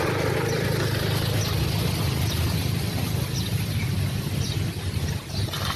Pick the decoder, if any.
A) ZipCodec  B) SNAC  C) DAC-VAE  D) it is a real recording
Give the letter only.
D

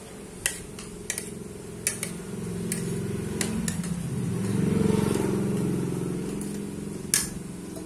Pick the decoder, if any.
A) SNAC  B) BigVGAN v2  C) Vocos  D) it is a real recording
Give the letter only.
D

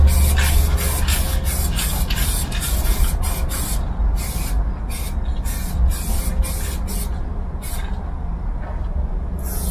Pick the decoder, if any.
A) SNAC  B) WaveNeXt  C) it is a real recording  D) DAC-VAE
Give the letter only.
C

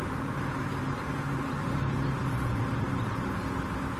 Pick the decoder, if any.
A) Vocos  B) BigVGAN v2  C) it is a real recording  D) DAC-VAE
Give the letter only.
B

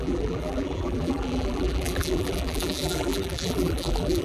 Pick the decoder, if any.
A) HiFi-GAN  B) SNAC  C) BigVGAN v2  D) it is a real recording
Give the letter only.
C